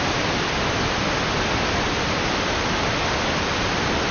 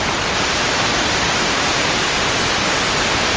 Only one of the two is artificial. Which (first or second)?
second